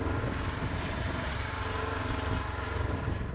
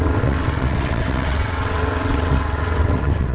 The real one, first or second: first